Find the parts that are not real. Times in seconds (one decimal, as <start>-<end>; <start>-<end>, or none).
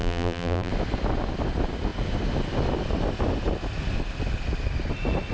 0.0-0.7